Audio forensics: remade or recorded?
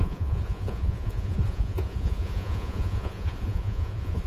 remade